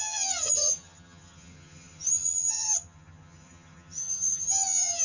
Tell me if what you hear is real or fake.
fake